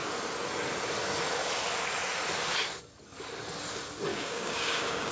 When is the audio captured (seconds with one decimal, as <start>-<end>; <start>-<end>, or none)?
0.0-4.1